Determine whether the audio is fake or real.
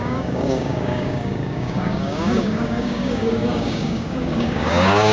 fake